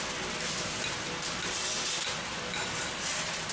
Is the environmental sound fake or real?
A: real